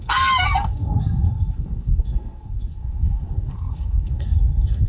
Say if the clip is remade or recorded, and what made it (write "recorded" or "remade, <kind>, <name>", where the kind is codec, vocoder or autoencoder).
remade, codec, SNAC